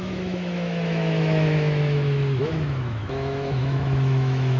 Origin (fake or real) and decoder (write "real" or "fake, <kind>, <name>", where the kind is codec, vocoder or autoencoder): fake, autoencoder, DAC-VAE